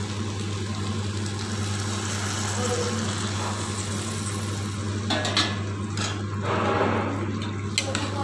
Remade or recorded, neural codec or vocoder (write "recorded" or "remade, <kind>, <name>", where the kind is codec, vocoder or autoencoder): recorded